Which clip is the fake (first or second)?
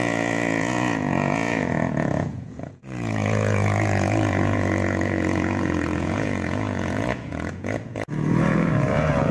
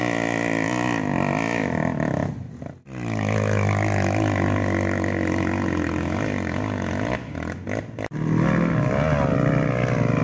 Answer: first